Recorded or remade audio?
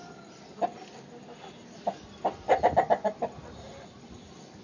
recorded